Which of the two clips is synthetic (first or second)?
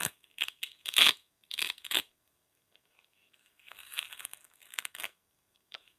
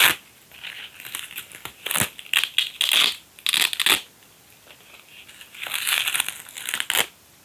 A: first